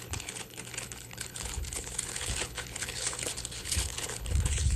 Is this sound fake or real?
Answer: fake